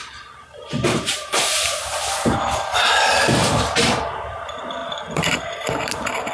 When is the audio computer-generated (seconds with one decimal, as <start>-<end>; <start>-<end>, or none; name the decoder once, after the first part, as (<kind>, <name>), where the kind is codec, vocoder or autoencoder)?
0.0-2.9 (vocoder, BigVGAN v2); 3.4-4.0; 4.8-6.3